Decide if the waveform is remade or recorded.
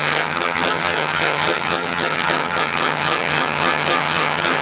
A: remade